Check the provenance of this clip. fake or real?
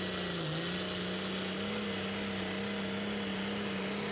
real